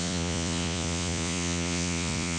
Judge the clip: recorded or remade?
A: remade